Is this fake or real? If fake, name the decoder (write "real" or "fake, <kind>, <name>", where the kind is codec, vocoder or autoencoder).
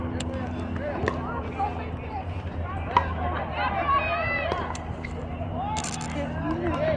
real